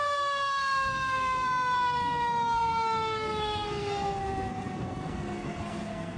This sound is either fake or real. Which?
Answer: fake